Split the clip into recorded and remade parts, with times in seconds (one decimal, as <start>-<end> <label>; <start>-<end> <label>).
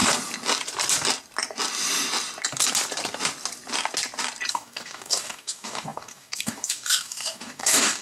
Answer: 0.0-4.5 recorded; 4.5-8.0 remade